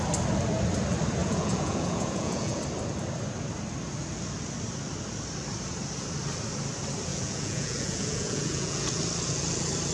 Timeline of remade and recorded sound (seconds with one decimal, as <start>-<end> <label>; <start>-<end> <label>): 0.0-1.2 recorded; 1.2-2.6 remade; 2.6-7.1 recorded; 7.1-9.0 remade; 9.0-9.9 recorded